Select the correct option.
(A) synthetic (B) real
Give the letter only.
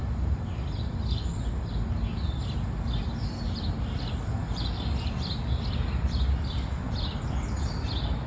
B